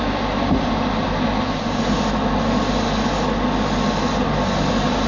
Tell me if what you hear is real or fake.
real